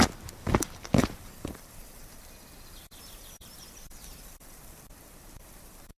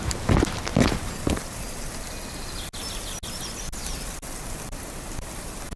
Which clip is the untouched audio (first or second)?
second